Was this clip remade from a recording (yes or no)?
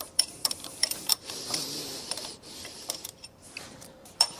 yes